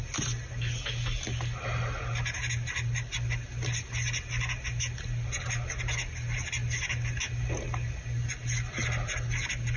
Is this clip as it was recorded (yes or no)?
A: yes